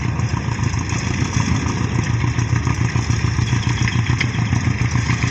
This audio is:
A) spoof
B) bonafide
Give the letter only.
B